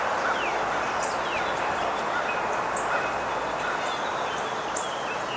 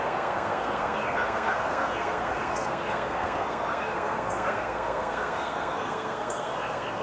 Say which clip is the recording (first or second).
first